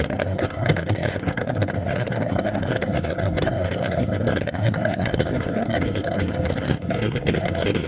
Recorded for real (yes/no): no